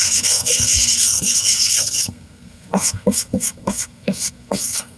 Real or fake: fake